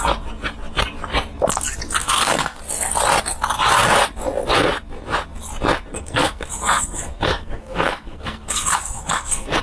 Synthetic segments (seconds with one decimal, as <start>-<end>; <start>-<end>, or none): 2.0-2.6; 5.9-9.6